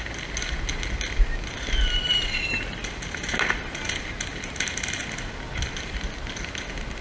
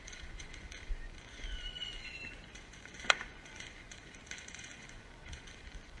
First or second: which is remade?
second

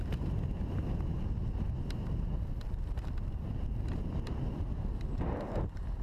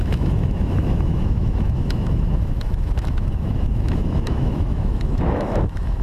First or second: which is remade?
second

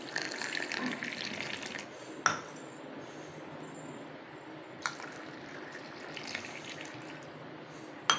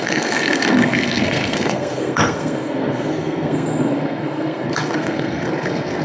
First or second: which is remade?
second